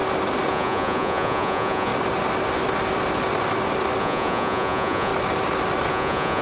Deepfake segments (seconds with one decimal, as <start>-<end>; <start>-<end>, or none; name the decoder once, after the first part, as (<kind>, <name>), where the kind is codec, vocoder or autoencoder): 0.5-1.9 (vocoder, Vocos); 4.0-5.1; 5.9-6.4